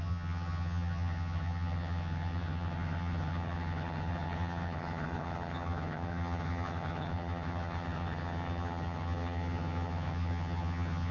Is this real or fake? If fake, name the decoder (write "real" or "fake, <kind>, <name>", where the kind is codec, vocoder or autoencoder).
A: fake, vocoder, HiFi-GAN